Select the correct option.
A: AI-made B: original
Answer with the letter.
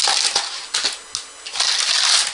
B